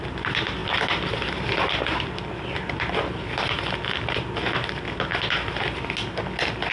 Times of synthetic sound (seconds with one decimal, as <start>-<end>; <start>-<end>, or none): none